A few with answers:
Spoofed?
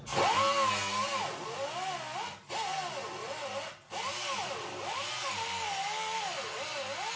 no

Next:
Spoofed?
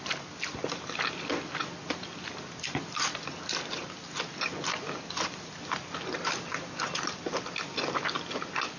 no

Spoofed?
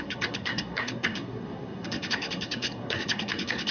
yes